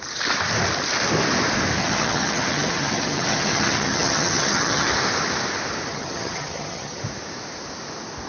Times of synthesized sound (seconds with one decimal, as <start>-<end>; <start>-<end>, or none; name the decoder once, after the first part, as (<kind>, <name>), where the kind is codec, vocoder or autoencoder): 1.8-4.9 (vocoder, HiFi-GAN); 5.9-7.0